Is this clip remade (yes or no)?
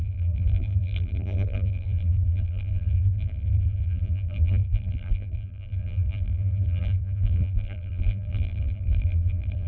yes